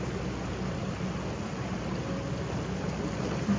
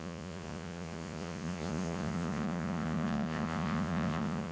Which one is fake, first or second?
second